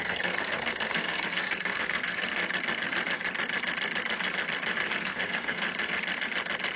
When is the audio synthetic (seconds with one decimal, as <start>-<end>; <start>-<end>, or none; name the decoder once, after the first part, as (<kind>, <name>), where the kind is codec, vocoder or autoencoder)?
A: 0.0-2.4 (codec, SNAC); 4.9-5.7